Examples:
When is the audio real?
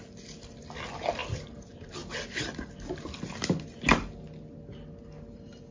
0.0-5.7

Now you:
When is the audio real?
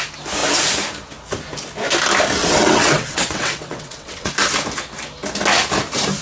0.0-2.4; 4.3-6.2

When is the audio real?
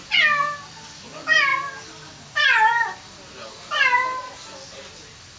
0.0-5.4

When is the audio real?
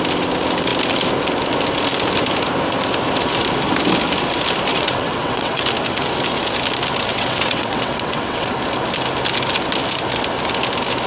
0.0-4.7; 5.6-7.1; 8.5-11.1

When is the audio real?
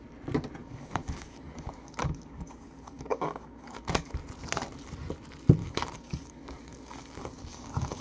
0.0-0.6; 4.1-5.6